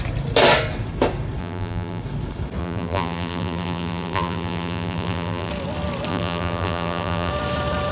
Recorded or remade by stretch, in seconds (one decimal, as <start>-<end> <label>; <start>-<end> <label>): 0.0-1.4 recorded; 1.4-2.0 remade; 2.0-2.6 recorded; 2.6-5.5 remade; 5.5-6.1 recorded; 6.1-7.3 remade; 7.3-7.9 recorded